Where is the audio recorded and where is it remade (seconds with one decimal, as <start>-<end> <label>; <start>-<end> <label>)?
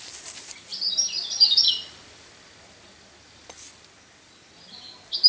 0.0-5.3 recorded